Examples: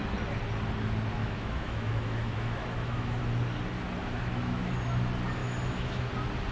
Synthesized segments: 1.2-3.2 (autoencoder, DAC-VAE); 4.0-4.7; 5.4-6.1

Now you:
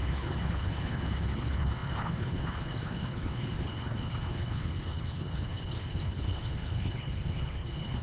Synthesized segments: 0.0-8.0 (codec, HILCodec)

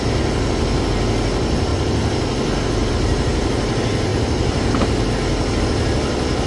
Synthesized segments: none

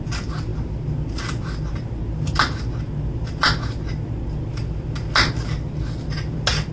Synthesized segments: none

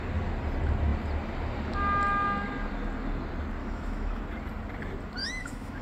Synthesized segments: 3.6-4.2 (autoencoder, DAC-VAE); 5.2-5.8